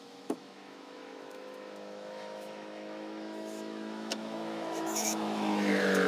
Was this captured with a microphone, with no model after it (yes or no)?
no